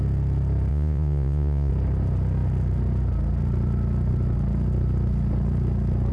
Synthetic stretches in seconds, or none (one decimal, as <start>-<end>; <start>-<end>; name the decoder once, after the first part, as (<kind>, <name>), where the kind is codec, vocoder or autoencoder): 0.7-1.7 (vocoder, Vocos)